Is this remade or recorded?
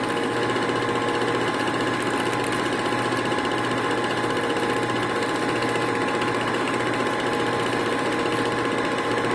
recorded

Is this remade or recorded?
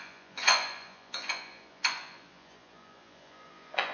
remade